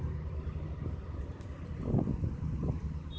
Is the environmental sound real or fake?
real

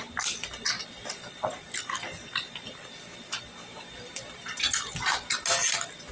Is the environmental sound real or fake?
real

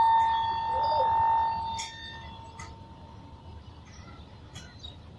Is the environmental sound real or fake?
real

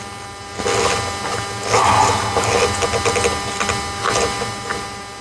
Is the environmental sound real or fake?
real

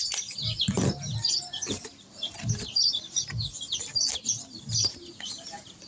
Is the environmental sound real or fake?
real